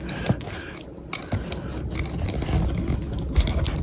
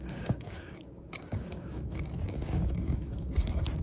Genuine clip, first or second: first